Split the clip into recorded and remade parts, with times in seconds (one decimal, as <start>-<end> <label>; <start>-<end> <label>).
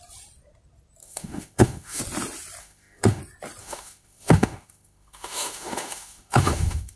0.0-1.0 recorded; 1.0-2.0 remade; 2.0-2.6 recorded; 2.6-3.2 remade; 3.2-3.6 recorded; 3.6-7.0 remade